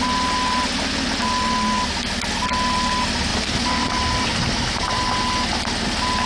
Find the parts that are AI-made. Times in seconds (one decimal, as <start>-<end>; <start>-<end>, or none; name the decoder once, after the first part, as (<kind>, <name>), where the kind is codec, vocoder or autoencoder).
3.3-3.9 (vocoder, BigVGAN v2); 4.3-5.0